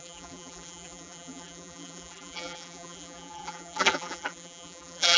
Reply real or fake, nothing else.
fake